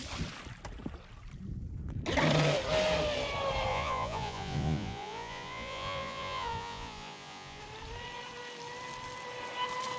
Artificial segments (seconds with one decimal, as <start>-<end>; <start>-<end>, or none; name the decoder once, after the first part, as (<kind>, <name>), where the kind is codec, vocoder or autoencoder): 3.7-7.6 (vocoder, Vocos)

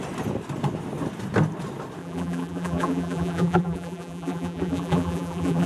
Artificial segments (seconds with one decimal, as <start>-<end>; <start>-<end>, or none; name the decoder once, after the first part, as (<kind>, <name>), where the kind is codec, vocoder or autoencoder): 2.0-5.7 (vocoder, BigVGAN v2)

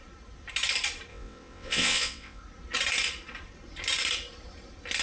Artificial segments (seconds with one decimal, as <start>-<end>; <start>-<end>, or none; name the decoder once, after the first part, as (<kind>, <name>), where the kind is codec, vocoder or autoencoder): 1.1-2.4 (vocoder, WaveNeXt)

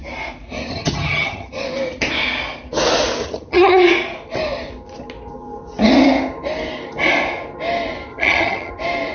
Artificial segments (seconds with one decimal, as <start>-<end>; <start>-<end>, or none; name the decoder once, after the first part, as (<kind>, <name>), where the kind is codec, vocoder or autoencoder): 0.7-1.5 (vocoder, HiFi-GAN); 3.2-3.8; 8.1-8.7

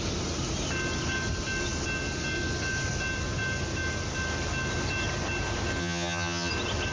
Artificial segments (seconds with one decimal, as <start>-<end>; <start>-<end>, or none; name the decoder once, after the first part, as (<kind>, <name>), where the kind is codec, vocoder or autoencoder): 5.8-6.5 (vocoder, HiFi-GAN)